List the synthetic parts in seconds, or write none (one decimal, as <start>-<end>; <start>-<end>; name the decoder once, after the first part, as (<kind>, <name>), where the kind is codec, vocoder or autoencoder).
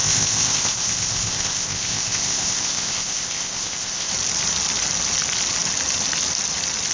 0.0-4.1 (codec, ZipCodec)